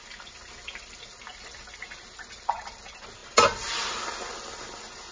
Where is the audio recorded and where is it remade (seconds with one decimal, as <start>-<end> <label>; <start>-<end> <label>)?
0.0-5.1 recorded